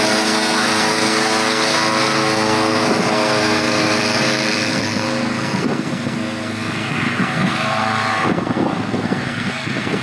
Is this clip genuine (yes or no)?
no